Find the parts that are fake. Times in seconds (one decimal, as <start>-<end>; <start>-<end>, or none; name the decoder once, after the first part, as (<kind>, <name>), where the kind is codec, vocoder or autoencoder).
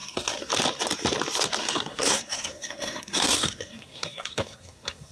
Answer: 0.0-0.5 (codec, SNAC); 1.6-5.1